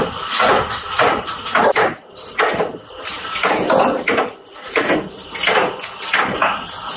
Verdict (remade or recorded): recorded